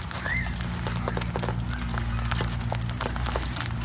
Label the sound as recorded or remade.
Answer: recorded